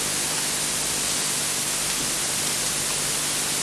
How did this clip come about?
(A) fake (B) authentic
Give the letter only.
B